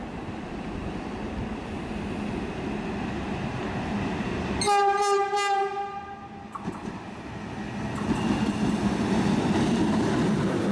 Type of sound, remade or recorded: recorded